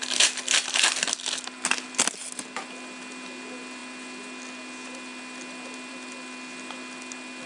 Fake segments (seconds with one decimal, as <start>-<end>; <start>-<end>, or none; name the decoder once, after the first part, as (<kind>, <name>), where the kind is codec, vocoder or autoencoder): none